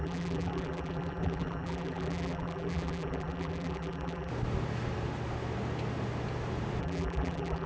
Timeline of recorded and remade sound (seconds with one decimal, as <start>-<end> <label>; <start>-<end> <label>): 0.0-4.3 remade; 4.3-6.8 recorded; 6.8-7.7 remade